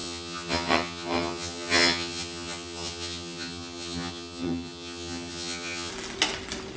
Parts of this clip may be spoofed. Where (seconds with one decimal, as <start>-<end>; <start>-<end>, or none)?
0.0-5.9